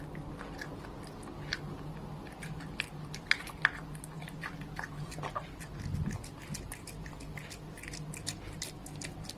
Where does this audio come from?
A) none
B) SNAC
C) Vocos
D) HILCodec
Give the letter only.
A